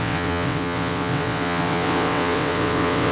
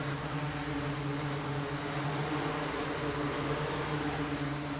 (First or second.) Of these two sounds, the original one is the second